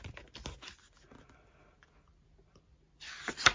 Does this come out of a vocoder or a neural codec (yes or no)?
no